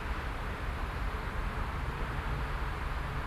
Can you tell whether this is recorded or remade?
recorded